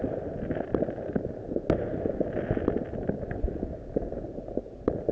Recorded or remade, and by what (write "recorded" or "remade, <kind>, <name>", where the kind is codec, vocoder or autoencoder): recorded